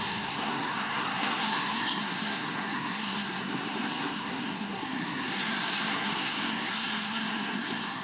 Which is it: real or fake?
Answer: fake